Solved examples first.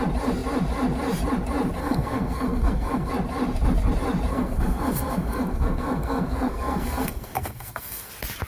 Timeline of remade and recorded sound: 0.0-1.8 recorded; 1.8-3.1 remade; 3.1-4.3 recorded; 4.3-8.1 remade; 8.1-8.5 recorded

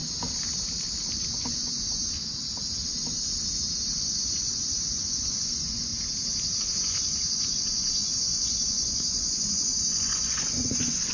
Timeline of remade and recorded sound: 0.0-1.3 recorded; 1.3-2.0 remade; 2.0-3.9 recorded; 3.9-5.9 remade; 5.9-6.6 recorded; 6.6-11.1 remade